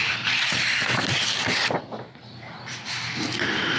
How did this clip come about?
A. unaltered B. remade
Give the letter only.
A